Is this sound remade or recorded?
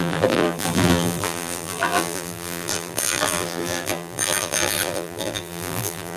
remade